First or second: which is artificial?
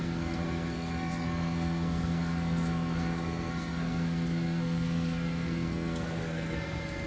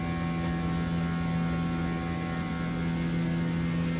first